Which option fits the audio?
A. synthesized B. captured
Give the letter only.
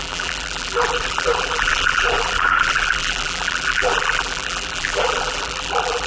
A